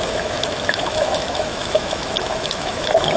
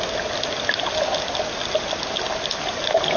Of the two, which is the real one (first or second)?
second